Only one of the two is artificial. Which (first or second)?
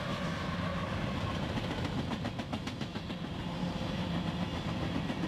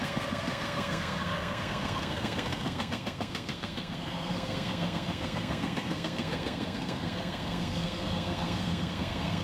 second